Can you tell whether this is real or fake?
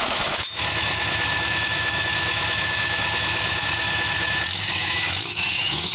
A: fake